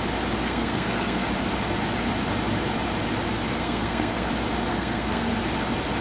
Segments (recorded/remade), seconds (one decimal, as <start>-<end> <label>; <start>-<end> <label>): 0.0-0.4 recorded; 0.4-1.3 remade; 1.3-3.5 recorded; 3.5-4.3 remade; 4.3-4.7 recorded; 4.7-5.4 remade; 5.4-6.0 recorded